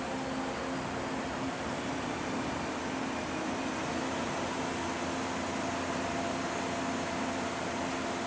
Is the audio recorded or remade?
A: recorded